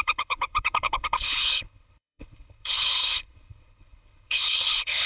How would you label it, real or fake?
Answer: fake